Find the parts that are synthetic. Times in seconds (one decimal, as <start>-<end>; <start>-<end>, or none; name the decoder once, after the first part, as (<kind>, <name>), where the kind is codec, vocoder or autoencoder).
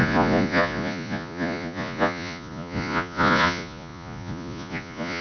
0.0-5.2 (vocoder, Vocos)